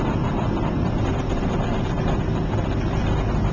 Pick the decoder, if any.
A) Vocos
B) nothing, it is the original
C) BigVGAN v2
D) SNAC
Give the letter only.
B